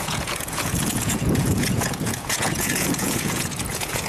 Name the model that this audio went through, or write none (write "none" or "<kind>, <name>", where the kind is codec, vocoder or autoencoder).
vocoder, Vocos